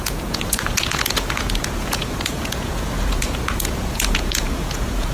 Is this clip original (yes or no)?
no